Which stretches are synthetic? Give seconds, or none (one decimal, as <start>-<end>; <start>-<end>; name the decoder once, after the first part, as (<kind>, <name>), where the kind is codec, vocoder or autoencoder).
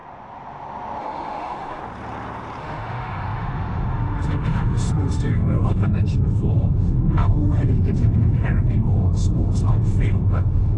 1.0-1.8 (autoencoder, DAC-VAE); 2.6-10.8